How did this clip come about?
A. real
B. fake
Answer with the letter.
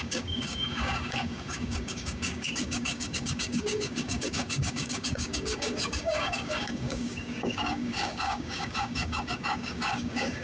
B